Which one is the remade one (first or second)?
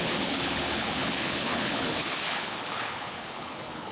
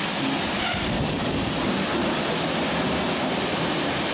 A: first